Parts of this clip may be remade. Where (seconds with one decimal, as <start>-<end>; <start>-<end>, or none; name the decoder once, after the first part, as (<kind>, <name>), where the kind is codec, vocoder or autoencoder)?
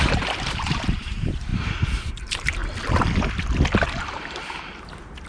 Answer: 0.0-2.6 (vocoder, BigVGAN v2)